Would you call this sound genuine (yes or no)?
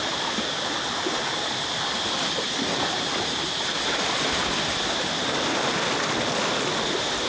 yes